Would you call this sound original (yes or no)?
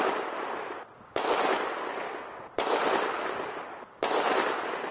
yes